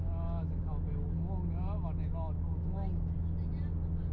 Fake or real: real